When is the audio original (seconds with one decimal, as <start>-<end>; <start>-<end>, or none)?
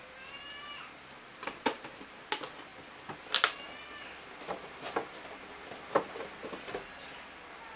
0.0-1.3; 2.0-7.8